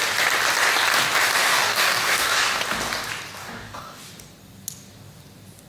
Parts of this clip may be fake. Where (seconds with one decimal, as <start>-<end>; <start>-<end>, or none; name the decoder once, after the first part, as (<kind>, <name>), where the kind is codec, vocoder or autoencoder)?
1.4-2.6 (codec, DAC); 3.4-4.0